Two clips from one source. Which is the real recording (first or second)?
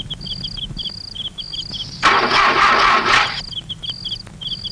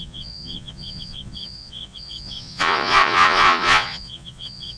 first